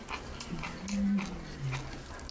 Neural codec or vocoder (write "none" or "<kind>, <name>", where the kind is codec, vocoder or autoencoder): none